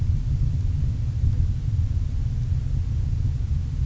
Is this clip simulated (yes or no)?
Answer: no